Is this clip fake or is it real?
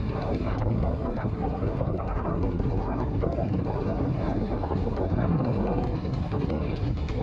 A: fake